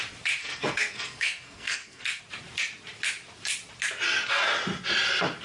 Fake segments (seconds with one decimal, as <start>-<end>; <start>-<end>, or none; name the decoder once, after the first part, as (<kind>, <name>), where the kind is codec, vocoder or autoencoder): 0.4-2.2 (codec, SNAC)

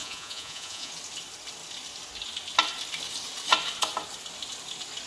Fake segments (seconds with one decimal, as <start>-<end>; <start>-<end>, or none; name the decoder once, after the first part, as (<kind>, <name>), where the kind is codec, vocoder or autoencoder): 0.0-0.9 (vocoder, Vocos)

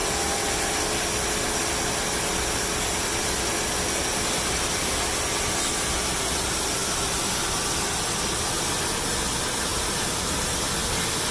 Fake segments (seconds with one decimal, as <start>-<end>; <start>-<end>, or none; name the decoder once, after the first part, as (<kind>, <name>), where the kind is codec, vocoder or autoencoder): 9.7-10.7 (vocoder, BigVGAN v2)

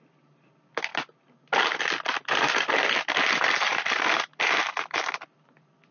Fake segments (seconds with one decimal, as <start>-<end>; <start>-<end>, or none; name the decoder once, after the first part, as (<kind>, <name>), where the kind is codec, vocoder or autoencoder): 3.7-4.3 (vocoder, BigVGAN v2)

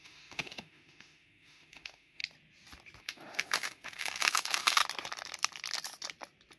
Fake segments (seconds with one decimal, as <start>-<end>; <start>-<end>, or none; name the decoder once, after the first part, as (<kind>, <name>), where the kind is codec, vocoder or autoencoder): 0.0-2.2 (autoencoder, DAC-VAE); 3.0-4.8

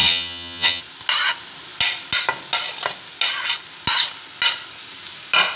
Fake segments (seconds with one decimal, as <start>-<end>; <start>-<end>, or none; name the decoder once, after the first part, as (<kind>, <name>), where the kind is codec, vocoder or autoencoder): 0.0-0.8 (vocoder, HiFi-GAN)

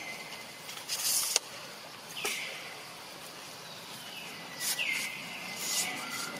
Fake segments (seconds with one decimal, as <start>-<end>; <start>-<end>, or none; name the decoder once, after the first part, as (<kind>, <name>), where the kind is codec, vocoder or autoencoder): 5.6-6.4 (vocoder, BigVGAN v2)

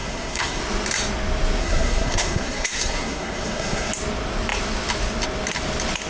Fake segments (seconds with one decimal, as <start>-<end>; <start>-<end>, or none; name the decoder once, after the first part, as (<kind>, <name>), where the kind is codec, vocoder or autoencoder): 0.0-0.6 (codec, SNAC); 1.6-3.9